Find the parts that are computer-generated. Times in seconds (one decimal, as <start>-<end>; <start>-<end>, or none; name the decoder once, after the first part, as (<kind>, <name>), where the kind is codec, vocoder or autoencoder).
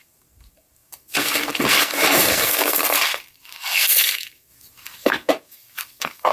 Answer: 0.0-6.3 (codec, SNAC)